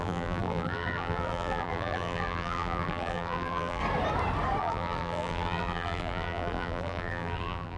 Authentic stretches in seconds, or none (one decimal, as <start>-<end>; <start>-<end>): 3.8-4.6